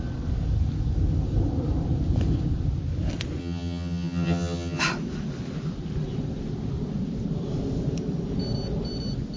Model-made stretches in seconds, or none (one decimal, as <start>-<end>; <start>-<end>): 3.4-4.8